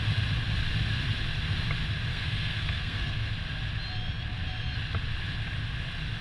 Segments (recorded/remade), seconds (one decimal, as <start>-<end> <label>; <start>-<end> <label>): 0.0-2.1 recorded; 2.1-3.3 remade; 3.3-6.2 recorded